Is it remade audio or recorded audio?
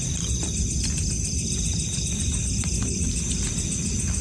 recorded